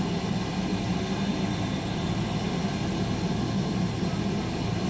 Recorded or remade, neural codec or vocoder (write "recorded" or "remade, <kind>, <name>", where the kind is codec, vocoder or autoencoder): recorded